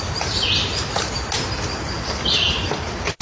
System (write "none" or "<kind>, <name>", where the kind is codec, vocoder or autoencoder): none